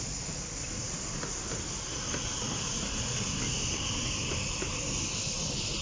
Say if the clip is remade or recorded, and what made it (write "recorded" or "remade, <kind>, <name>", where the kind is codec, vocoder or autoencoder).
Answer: recorded